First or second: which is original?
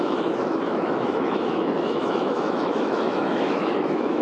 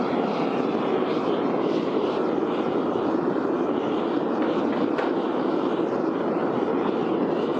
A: second